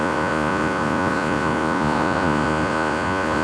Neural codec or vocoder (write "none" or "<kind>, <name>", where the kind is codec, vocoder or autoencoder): vocoder, Vocos